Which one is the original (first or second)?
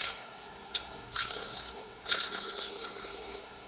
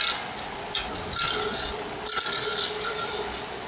second